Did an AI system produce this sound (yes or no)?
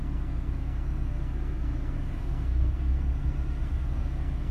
yes